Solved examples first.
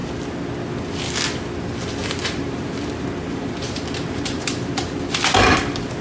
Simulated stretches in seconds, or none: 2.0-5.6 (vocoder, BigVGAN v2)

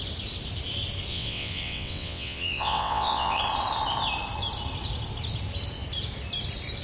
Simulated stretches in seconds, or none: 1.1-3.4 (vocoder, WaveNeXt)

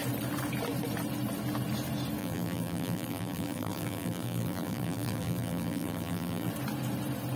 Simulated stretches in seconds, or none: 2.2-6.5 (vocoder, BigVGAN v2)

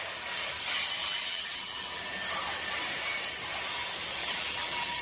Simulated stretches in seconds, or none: 1.0-2.0 (vocoder, BigVGAN v2); 4.2-5.0

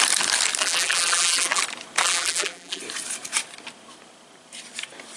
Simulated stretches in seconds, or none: 0.6-1.6 (vocoder, BigVGAN v2); 2.0-2.8

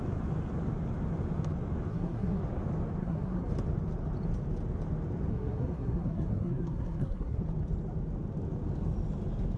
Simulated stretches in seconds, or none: 1.9-2.4 (codec, SNAC); 3.0-3.5; 5.3-7.4

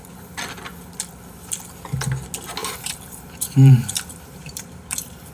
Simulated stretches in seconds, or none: 2.6-5.3 (vocoder, BigVGAN v2)

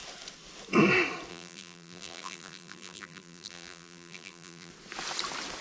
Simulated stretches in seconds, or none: 1.3-4.7 (vocoder, BigVGAN v2)